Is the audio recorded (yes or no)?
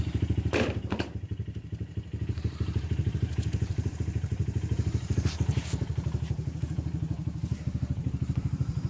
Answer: no